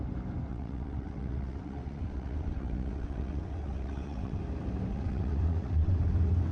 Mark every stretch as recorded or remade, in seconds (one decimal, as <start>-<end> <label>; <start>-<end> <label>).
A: 0.0-0.5 recorded; 0.5-4.4 remade; 4.4-4.9 recorded; 4.9-6.0 remade; 6.0-6.5 recorded